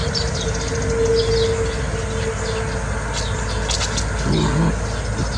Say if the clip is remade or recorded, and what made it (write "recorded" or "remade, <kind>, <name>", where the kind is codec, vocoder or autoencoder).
recorded